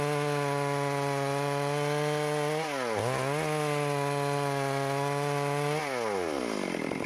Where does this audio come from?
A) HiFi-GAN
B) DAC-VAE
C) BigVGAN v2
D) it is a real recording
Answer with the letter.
D